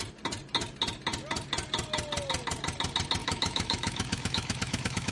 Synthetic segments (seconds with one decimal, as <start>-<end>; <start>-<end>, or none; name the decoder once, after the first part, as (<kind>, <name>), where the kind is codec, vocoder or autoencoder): 3.2-5.1 (autoencoder, DAC-VAE)